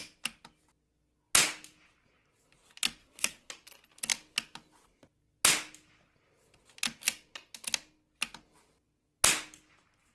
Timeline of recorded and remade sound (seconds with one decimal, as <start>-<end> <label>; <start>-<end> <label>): 0.0-3.0 recorded; 3.0-3.5 remade; 3.5-10.1 recorded